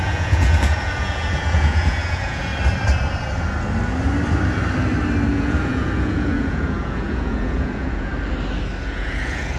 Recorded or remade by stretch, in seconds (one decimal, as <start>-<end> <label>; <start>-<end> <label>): 0.0-2.5 remade; 2.5-5.3 recorded; 5.3-8.1 remade; 8.1-8.8 recorded; 8.8-9.6 remade